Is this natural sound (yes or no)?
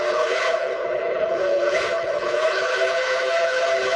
no